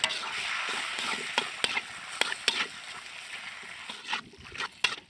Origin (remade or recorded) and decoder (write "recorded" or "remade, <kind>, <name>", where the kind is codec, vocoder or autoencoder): recorded